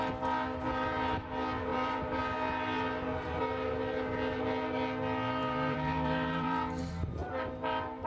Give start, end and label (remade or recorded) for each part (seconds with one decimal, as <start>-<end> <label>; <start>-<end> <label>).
0.0-1.7 recorded; 1.7-2.2 remade; 2.2-5.4 recorded; 5.4-6.8 remade; 6.8-7.2 recorded; 7.2-8.1 remade